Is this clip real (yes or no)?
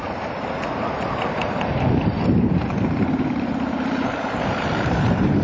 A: no